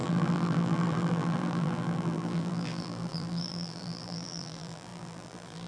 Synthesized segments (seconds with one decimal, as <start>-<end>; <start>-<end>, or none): 0.0-5.7